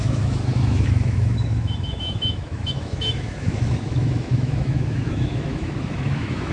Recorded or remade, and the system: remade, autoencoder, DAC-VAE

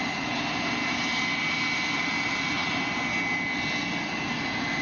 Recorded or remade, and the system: recorded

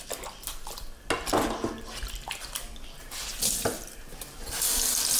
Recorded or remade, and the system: recorded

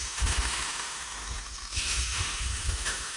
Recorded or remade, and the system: remade, autoencoder, DAC-VAE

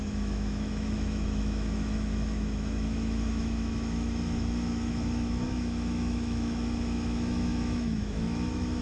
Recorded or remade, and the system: remade, autoencoder, DAC-VAE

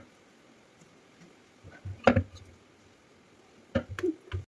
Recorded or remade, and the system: recorded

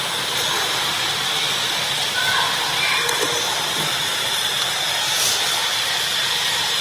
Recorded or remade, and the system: recorded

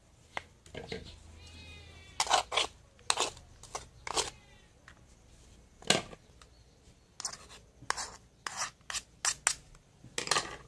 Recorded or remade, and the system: recorded